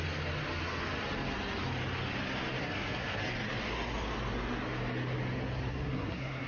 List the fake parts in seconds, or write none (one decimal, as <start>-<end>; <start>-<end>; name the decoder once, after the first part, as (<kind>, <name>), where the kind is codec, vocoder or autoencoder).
2.6-3.2 (codec, SNAC); 5.7-6.5